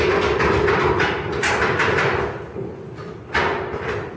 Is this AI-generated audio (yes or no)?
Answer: no